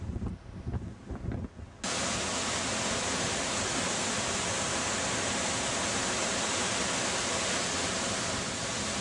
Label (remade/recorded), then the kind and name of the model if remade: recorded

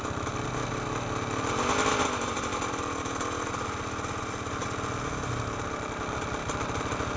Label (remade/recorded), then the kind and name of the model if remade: recorded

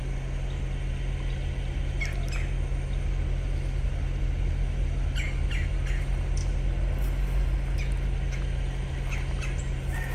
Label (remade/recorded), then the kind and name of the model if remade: recorded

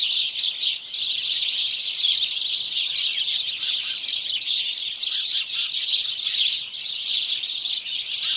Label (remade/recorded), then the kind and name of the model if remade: recorded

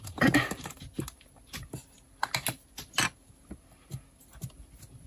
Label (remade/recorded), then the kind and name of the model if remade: recorded